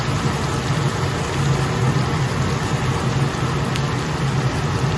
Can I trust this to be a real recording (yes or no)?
yes